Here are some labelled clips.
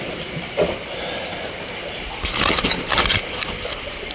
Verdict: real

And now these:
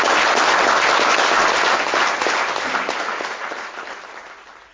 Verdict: real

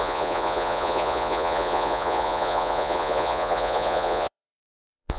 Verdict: fake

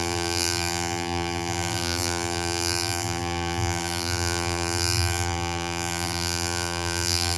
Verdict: fake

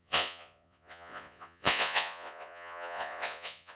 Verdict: fake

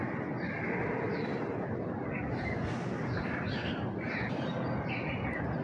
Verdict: real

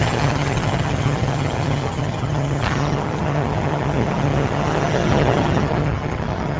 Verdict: fake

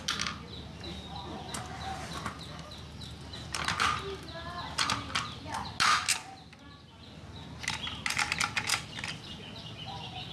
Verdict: real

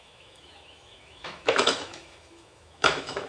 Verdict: fake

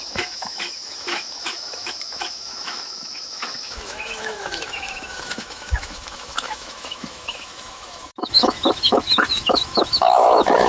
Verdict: fake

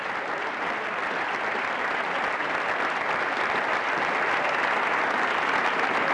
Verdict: real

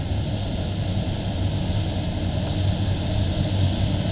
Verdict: real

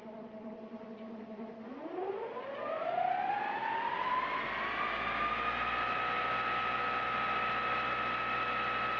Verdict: real